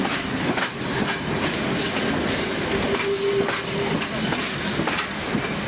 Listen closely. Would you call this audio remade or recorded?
remade